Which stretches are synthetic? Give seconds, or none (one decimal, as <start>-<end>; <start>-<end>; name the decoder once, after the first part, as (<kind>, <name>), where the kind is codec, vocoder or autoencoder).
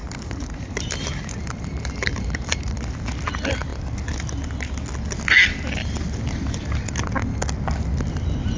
0.0-2.7 (vocoder, BigVGAN v2)